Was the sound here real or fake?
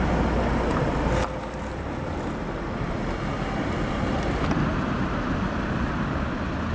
real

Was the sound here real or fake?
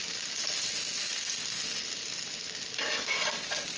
real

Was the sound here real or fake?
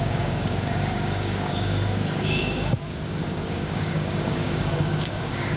fake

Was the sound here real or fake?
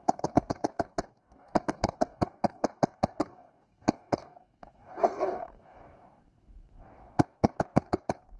fake